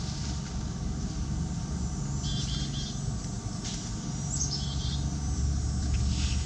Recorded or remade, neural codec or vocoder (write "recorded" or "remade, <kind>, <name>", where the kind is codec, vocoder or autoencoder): recorded